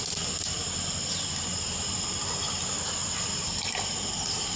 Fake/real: real